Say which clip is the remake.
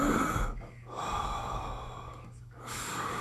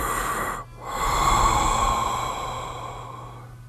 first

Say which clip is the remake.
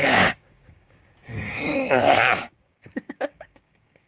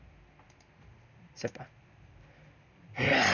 first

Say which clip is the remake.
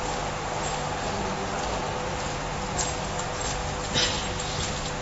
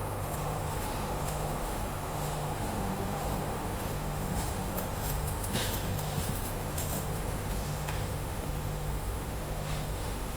second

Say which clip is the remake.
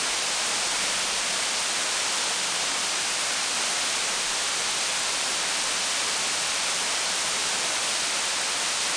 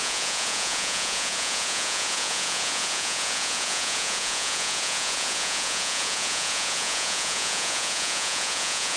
second